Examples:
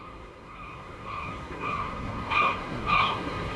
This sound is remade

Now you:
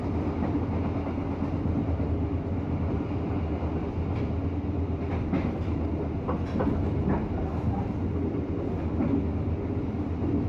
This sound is recorded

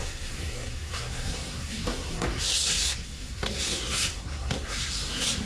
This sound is remade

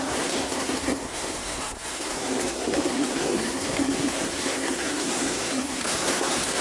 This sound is remade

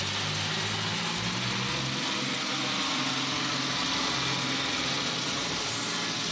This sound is recorded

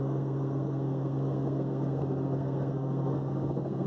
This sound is remade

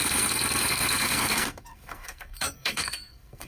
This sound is remade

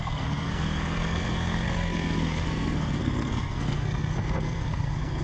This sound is remade